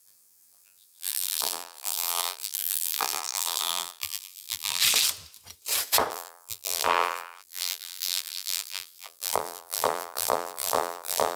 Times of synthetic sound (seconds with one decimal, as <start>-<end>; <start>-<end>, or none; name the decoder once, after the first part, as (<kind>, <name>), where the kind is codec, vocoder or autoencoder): 0.0-4.8 (vocoder, BigVGAN v2); 6.1-11.4